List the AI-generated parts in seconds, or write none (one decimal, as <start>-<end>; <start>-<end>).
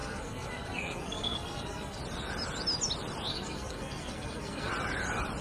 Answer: 0.0-2.0; 3.3-4.7